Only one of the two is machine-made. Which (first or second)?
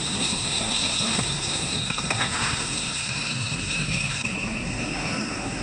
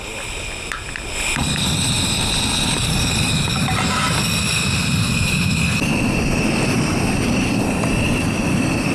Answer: first